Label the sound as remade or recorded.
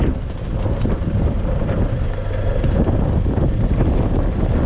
recorded